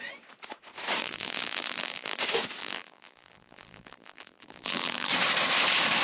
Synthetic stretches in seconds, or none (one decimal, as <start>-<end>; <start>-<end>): 1.0-2.2; 2.6-5.1